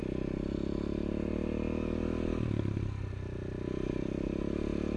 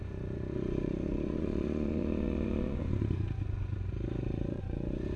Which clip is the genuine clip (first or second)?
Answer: first